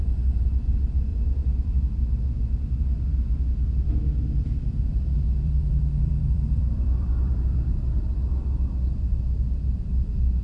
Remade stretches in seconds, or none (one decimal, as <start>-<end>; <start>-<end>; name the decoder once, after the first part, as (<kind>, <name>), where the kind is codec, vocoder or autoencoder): 1.1-1.8 (vocoder, BigVGAN v2); 4.9-9.2